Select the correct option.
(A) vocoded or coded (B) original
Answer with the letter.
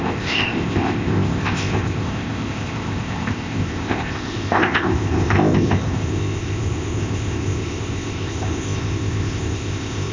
A